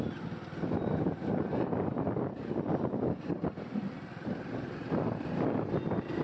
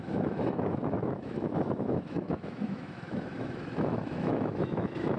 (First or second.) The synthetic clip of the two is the second